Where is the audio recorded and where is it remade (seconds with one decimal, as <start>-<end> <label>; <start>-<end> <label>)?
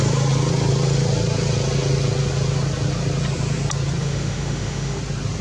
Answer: 0.0-4.0 recorded; 4.0-5.0 remade; 5.0-5.4 recorded